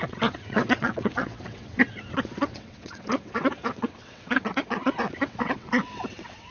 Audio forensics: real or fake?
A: fake